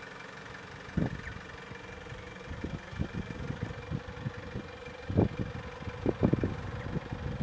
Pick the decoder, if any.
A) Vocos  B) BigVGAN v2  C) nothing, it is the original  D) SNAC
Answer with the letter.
C